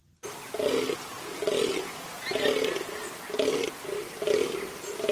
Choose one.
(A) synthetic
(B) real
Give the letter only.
B